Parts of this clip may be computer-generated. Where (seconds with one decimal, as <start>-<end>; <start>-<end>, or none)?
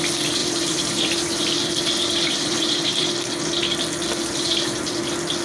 0.4-3.1; 4.2-5.0